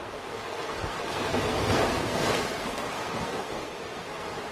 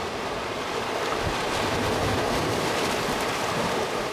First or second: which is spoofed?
first